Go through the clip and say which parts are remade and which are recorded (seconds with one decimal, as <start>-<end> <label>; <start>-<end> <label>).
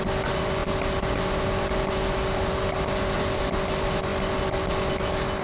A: 0.0-5.4 recorded